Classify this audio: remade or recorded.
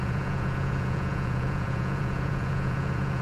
remade